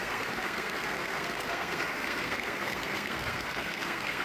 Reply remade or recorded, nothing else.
remade